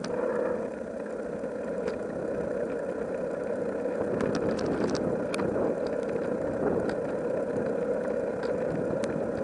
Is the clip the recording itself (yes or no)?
yes